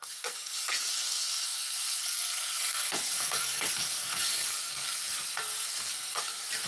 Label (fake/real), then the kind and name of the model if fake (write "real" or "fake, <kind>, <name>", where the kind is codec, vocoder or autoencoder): fake, codec, SNAC